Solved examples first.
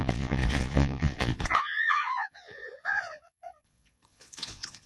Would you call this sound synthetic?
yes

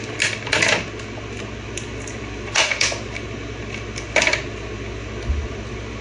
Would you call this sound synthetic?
no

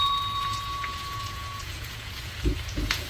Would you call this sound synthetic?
yes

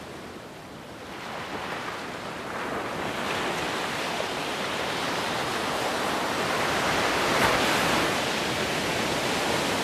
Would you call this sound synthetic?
no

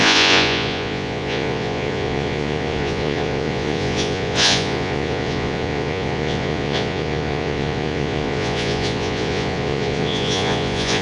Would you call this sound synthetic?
yes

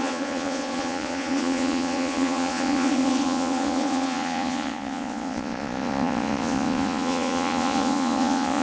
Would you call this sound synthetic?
yes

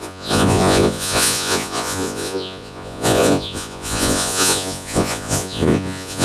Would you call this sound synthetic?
yes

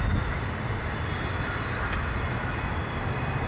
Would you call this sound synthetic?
no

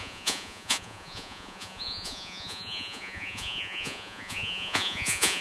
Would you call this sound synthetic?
yes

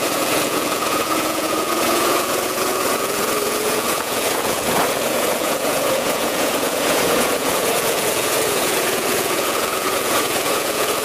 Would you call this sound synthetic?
yes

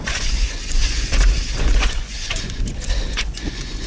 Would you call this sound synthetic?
yes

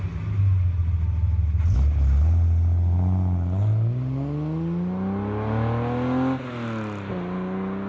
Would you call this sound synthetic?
no